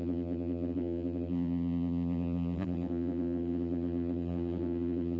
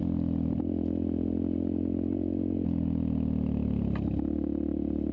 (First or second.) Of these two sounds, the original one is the second